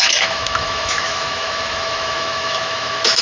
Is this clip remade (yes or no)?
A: yes